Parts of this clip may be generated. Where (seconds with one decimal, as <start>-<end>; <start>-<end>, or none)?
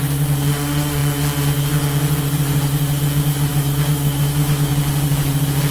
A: 3.5-4.7